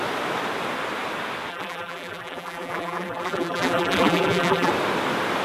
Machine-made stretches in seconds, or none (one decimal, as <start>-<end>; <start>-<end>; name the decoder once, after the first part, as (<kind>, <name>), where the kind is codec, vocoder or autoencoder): 1.5-4.7 (vocoder, BigVGAN v2)